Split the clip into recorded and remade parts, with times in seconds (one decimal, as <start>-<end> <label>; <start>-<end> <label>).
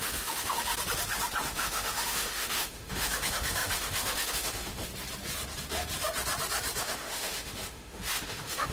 0.0-0.7 remade; 0.7-1.4 recorded; 1.4-4.9 remade; 4.9-6.8 recorded; 6.8-8.7 remade